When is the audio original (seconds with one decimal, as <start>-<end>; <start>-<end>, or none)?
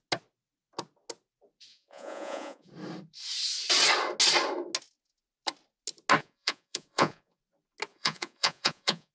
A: 0.0-1.7; 2.7-6.2; 7.4-7.9